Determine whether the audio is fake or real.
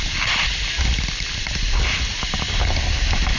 real